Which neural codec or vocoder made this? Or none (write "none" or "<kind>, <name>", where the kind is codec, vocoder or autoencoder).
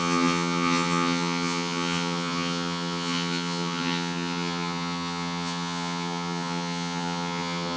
vocoder, HiFi-GAN